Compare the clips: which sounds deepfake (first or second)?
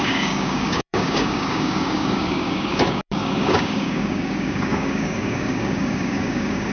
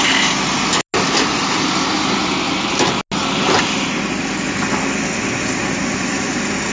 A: first